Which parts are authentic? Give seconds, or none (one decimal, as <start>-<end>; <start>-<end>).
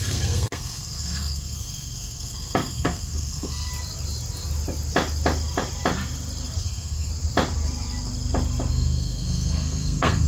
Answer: 3.7-6.6; 7.1-8.7